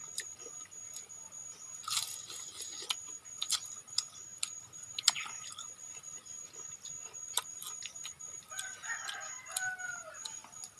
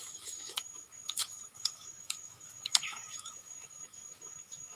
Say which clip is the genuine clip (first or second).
first